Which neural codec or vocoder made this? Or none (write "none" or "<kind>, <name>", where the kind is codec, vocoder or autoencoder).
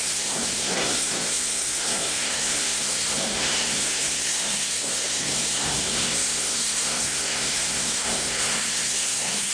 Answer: codec, SNAC